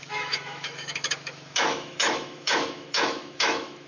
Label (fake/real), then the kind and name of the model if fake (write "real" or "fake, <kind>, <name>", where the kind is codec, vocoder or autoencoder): fake, autoencoder, DAC-VAE